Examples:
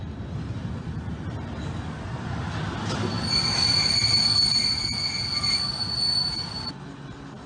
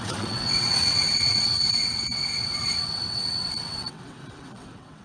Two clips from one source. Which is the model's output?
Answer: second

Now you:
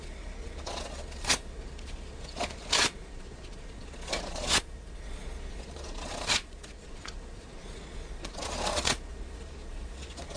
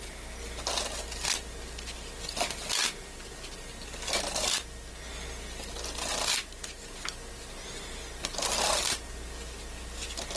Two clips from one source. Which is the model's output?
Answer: first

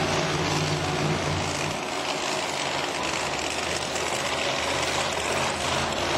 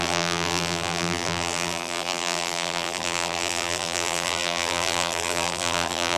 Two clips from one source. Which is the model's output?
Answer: second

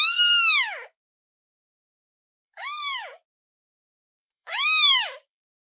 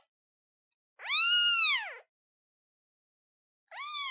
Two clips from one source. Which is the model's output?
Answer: first